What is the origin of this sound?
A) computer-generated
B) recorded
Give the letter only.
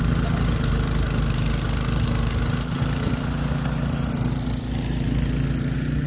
B